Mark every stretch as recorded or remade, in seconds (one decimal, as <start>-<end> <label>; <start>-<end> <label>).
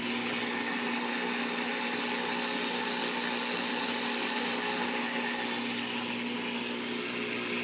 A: 0.0-7.6 recorded